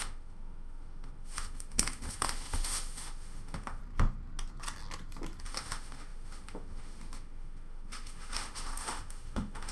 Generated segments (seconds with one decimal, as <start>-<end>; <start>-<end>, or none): 0.0-3.8; 5.4-9.7